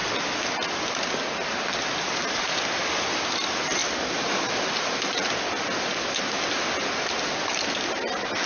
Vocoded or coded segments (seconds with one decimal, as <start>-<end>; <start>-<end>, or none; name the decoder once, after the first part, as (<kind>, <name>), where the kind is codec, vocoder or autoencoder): none